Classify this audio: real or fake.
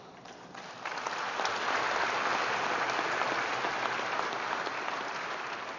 real